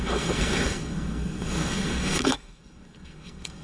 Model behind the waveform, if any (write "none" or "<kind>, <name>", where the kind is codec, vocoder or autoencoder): codec, SNAC